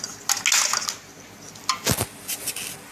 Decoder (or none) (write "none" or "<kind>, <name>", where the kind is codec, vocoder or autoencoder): none